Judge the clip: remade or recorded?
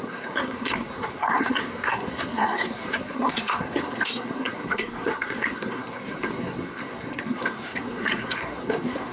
remade